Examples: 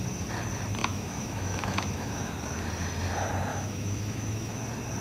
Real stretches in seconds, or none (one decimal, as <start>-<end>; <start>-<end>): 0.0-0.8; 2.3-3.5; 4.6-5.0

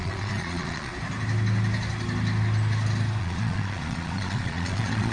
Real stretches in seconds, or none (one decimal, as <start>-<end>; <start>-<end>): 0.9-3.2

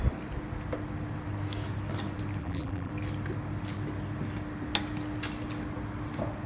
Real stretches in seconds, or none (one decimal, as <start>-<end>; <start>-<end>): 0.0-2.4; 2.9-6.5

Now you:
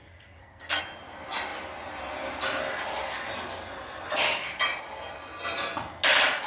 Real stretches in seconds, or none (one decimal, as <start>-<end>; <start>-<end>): 0.8-6.5

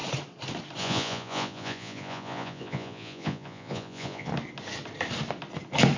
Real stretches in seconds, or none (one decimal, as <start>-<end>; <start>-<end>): 0.0-0.8; 4.3-6.0